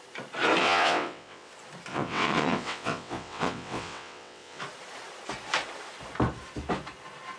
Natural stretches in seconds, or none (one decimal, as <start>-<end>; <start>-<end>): 0.0-0.6; 1.5-1.9; 4.6-7.4